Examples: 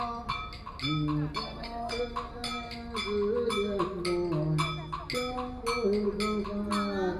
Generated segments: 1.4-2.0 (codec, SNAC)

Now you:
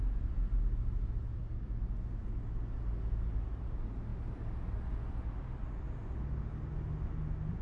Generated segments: none

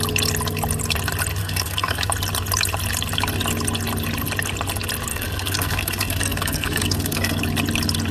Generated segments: 1.4-2.0 (codec, SNAC); 5.1-7.4